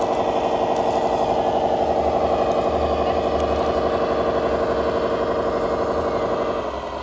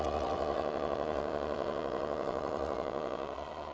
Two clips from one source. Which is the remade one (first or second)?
second